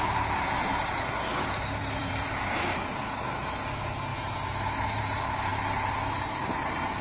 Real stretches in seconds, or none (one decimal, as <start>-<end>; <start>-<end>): 0.0-1.8; 3.2-7.0

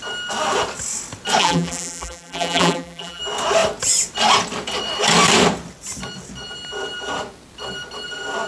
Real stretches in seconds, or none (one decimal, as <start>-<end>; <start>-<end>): 0.0-1.4; 3.2-8.5

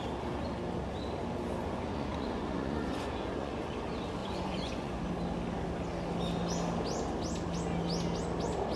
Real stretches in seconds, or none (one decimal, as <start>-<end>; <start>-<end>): 0.0-1.6; 3.8-4.2; 5.1-8.8